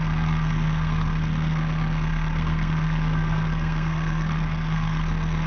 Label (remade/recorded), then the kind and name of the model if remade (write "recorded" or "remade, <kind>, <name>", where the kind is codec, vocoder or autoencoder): remade, codec, SNAC